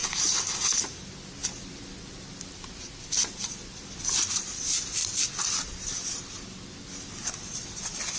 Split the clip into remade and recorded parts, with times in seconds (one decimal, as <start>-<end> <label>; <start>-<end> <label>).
0.0-1.4 recorded; 1.4-4.6 remade; 4.6-8.2 recorded